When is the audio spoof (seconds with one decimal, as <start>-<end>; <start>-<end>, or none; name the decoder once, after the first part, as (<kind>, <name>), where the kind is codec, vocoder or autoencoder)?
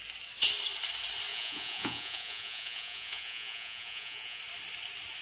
1.3-4.4 (vocoder, Vocos)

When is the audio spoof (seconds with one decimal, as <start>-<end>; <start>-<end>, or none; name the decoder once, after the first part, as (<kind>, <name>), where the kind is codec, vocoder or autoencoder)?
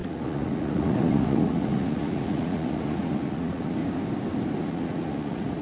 0.0-3.8 (vocoder, Vocos); 4.6-5.6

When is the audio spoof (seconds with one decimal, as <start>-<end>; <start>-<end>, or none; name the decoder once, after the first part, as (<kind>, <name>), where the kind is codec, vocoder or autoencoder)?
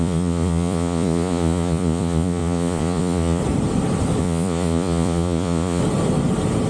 0.0-3.4 (vocoder, Vocos); 4.2-5.8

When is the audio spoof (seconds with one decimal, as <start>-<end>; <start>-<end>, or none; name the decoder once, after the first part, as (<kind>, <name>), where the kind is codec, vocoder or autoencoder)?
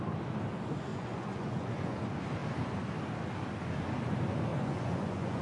0.9-2.0 (vocoder, Vocos); 4.5-5.4